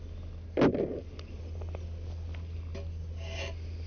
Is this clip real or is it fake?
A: real